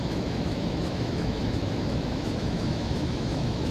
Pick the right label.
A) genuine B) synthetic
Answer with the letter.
B